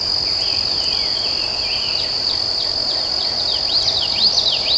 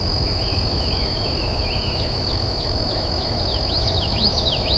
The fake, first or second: second